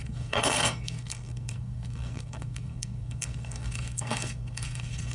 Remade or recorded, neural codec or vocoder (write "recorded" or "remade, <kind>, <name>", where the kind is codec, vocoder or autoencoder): remade, codec, SNAC